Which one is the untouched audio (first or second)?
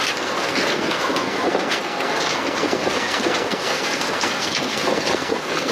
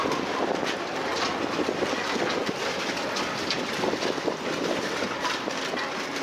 second